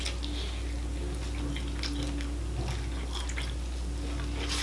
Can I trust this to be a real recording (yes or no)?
yes